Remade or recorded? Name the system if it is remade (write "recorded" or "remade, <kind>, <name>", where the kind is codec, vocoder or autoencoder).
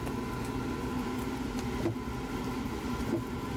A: recorded